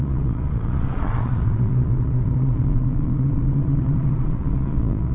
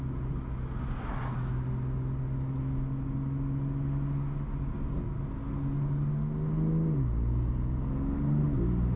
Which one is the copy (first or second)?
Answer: first